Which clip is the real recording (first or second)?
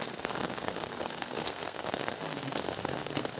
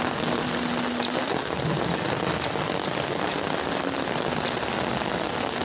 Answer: second